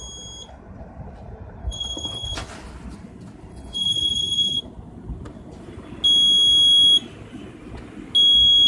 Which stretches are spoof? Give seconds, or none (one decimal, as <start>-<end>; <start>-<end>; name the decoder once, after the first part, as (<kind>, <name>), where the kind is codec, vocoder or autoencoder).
1.6-2.3 (codec, HILCodec); 3.5-4.6